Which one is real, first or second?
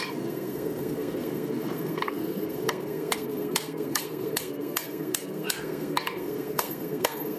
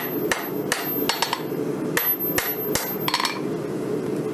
second